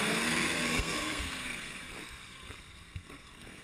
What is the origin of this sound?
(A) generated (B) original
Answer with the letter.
A